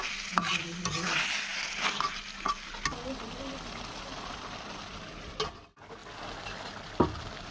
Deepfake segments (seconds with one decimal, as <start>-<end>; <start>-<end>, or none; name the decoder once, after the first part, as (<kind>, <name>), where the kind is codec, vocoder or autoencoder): none